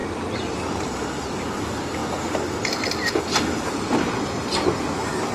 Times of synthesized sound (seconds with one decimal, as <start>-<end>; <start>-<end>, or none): none